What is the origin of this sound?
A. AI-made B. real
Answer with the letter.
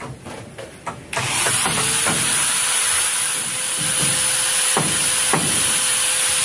B